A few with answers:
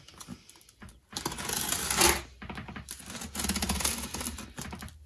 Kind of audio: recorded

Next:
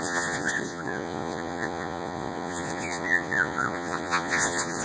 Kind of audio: remade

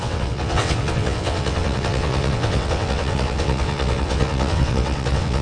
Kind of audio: remade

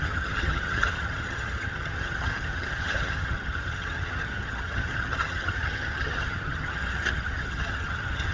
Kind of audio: remade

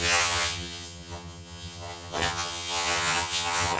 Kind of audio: remade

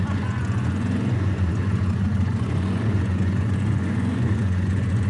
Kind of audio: remade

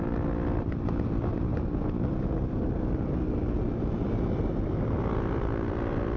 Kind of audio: recorded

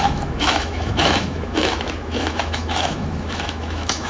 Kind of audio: remade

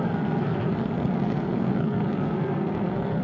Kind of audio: remade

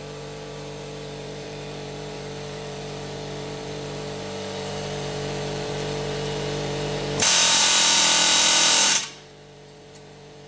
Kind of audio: remade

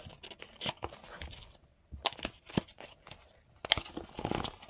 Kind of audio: recorded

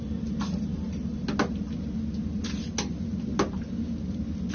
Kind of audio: recorded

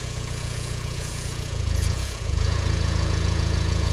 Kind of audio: remade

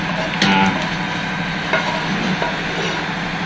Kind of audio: recorded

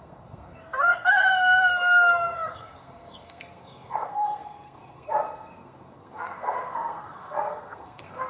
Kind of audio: remade